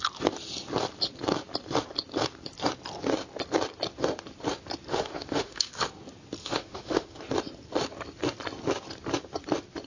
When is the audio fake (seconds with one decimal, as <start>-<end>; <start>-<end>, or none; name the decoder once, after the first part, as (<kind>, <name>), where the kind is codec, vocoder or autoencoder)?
4.9-5.8 (autoencoder, DAC-VAE); 6.4-7.2

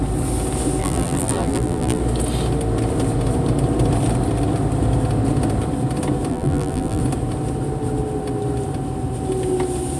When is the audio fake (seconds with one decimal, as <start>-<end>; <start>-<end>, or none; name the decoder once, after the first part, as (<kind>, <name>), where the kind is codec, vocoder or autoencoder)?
0.8-2.0 (vocoder, BigVGAN v2); 6.3-7.0

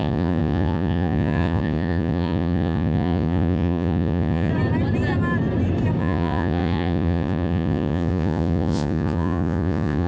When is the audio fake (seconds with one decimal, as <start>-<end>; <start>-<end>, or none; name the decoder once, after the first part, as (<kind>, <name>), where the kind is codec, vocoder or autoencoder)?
0.0-4.5 (vocoder, Vocos); 6.0-10.1

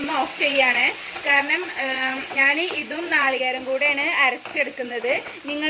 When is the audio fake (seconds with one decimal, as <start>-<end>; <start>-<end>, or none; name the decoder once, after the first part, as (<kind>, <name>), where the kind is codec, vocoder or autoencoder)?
0.0-3.4 (vocoder, WaveNeXt); 4.5-5.3

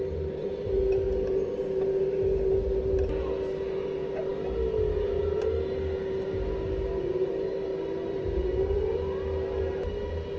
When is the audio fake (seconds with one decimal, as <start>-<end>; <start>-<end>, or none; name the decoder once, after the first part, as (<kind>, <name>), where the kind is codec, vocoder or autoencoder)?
none

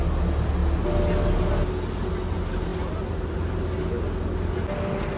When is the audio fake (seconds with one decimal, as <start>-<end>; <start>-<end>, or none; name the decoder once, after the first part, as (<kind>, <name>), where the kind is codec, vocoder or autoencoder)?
none

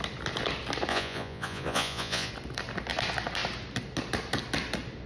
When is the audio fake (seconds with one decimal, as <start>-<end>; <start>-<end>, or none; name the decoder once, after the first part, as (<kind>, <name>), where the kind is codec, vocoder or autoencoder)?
0.9-2.3 (vocoder, Vocos)